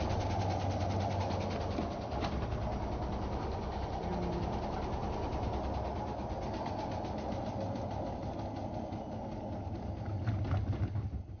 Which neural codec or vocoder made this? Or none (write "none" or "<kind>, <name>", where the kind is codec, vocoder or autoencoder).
none